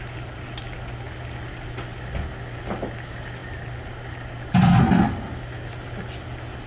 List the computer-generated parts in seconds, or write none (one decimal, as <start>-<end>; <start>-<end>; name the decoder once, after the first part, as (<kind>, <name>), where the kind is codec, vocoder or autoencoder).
none